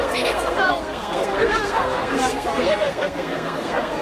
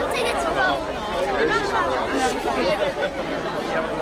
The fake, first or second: first